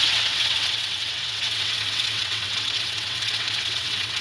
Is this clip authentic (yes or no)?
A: no